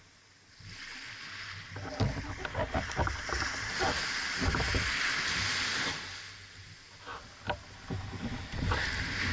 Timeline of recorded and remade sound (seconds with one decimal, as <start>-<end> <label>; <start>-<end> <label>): 0.0-9.3 recorded